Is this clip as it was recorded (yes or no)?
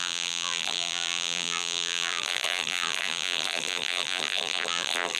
no